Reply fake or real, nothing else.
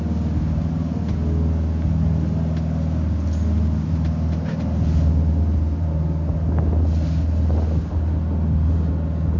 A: real